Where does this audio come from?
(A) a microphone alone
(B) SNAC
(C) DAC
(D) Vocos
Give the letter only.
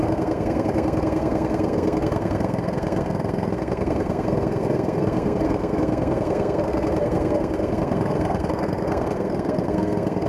B